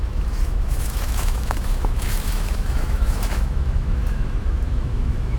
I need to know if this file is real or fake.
fake